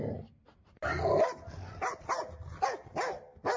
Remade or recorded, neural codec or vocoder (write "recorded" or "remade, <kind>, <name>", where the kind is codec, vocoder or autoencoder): recorded